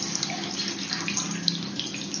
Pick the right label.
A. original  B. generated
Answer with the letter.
A